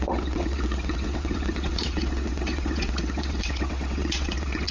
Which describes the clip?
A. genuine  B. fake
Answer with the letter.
B